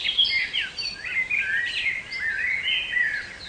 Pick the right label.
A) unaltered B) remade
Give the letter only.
A